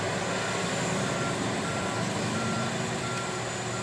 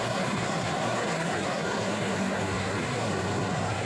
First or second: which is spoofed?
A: second